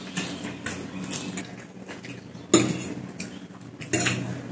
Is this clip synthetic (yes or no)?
no